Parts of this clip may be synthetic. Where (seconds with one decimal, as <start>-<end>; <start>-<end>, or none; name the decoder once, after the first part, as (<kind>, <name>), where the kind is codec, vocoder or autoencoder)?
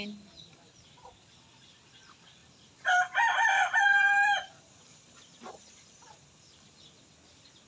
2.4-6.8 (vocoder, BigVGAN v2)